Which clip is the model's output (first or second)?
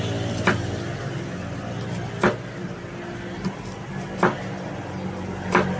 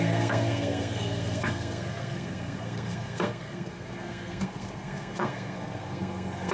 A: second